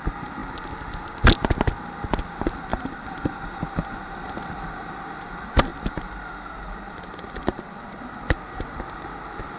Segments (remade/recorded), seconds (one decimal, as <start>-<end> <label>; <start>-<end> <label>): 0.0-2.7 recorded; 2.7-3.4 remade; 3.4-5.7 recorded; 5.7-8.0 remade; 8.0-9.6 recorded